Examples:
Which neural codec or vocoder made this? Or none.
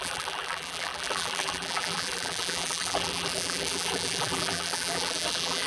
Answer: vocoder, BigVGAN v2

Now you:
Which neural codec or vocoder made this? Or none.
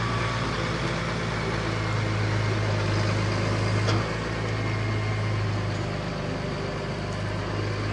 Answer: none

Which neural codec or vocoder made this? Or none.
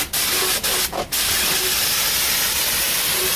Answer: none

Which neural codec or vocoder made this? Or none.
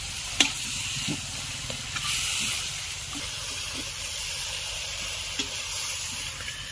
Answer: vocoder, BigVGAN v2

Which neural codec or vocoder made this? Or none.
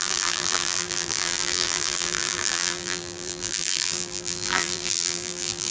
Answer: vocoder, BigVGAN v2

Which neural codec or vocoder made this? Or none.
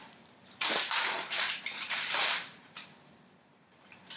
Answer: vocoder, BigVGAN v2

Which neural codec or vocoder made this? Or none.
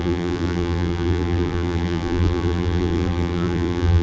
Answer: vocoder, BigVGAN v2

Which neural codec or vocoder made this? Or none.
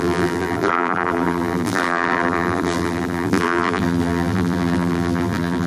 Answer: vocoder, BigVGAN v2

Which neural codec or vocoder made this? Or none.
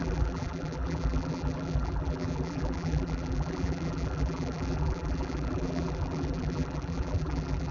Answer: vocoder, BigVGAN v2